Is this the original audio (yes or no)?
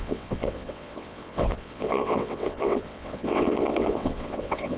no